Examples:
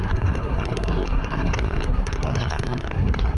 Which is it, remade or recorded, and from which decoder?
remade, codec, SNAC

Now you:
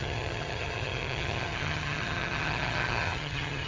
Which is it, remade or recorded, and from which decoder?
remade, vocoder, HiFi-GAN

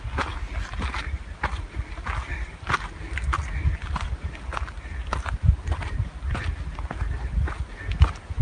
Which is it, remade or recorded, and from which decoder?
recorded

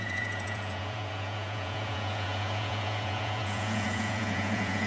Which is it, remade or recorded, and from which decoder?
remade, vocoder, Vocos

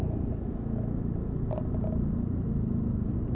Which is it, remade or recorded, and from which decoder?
recorded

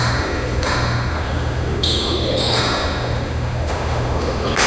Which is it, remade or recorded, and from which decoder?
remade, autoencoder, DAC-VAE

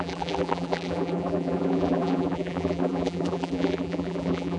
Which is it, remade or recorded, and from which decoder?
remade, vocoder, BigVGAN v2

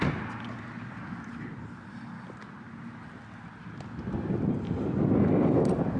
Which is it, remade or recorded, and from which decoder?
recorded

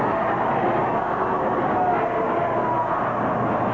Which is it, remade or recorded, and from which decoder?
recorded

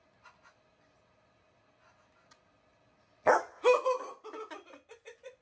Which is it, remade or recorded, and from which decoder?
recorded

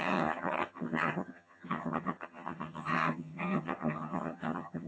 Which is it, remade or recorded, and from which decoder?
remade, vocoder, HiFi-GAN